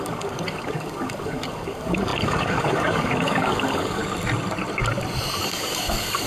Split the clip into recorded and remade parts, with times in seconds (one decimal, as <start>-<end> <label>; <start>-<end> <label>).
0.0-4.0 remade; 4.0-5.4 recorded; 5.4-6.3 remade